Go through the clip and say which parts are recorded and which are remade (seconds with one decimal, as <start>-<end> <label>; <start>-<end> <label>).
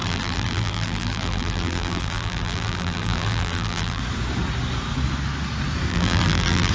0.0-4.0 remade; 4.0-5.9 recorded; 5.9-6.7 remade